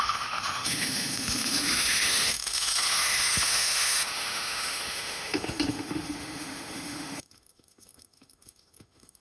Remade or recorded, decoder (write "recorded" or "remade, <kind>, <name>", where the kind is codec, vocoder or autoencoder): remade, autoencoder, DAC-VAE